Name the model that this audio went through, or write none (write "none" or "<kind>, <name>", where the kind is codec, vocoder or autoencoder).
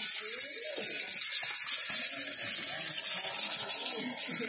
none